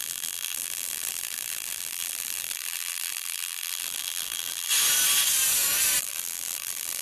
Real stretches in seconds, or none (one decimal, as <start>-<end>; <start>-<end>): 4.7-6.0